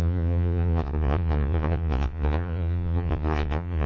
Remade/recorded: remade